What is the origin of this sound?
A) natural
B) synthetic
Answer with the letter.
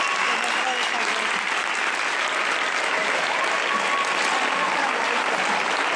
A